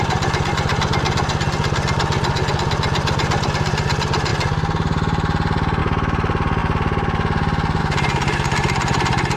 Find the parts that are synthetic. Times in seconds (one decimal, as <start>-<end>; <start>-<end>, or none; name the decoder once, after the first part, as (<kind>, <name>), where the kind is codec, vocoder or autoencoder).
none